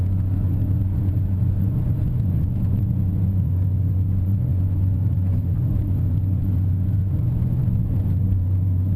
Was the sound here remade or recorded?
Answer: remade